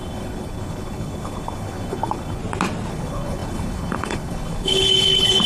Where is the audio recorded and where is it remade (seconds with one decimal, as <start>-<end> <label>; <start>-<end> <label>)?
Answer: 0.0-2.4 remade; 2.4-2.9 recorded; 2.9-5.5 remade